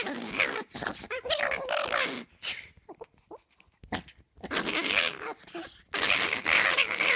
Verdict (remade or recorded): recorded